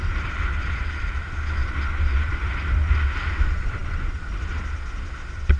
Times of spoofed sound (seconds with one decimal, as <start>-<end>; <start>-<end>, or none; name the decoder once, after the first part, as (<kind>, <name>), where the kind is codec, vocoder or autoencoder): none